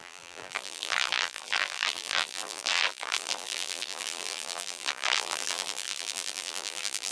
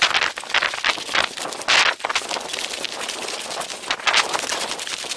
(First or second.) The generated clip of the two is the first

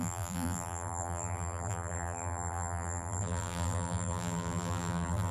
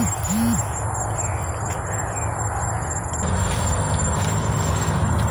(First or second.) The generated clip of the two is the first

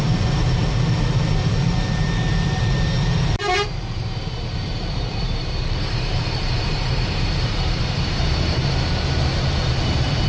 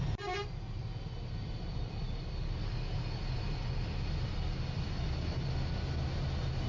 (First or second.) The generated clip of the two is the first